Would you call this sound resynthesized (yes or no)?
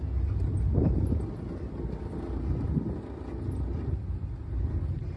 no